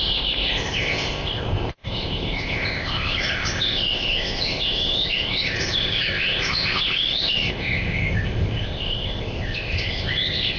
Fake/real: fake